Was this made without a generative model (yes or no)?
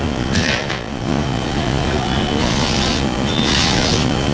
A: no